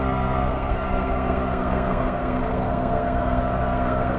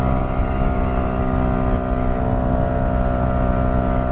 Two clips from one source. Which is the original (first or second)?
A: second